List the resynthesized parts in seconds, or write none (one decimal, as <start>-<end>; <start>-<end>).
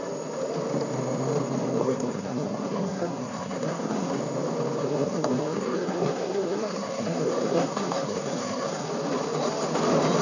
1.8-4.2; 4.8-8.9